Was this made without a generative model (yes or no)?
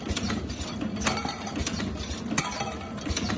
yes